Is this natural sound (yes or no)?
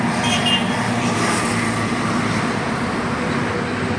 yes